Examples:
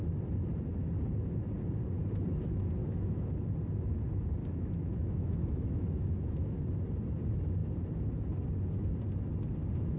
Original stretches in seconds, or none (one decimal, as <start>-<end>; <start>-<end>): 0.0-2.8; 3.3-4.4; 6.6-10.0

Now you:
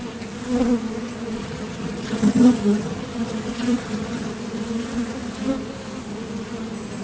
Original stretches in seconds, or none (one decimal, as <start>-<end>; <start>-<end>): 0.0-1.4; 4.3-7.0

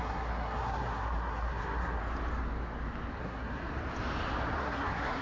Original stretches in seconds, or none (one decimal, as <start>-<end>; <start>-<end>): 2.0-3.2; 3.6-4.6